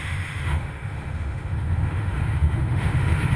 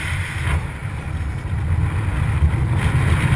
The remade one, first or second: first